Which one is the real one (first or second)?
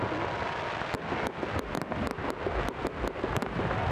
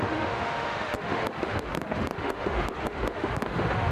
first